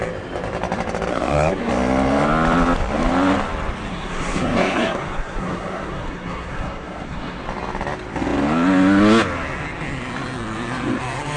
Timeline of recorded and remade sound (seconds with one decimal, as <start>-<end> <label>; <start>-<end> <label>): 0.0-1.1 recorded; 1.1-1.7 remade; 1.7-3.9 recorded; 3.9-7.4 remade; 7.4-11.4 recorded